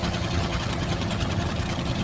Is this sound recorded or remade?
remade